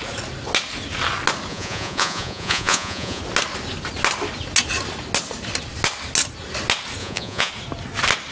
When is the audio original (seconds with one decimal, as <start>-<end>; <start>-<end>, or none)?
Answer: 0.0-1.5; 3.2-7.0; 7.5-8.3